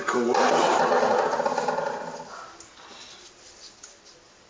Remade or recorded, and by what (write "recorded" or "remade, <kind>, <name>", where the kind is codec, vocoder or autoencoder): recorded